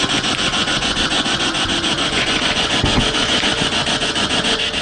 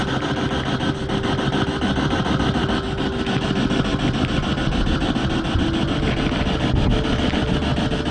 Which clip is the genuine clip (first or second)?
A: second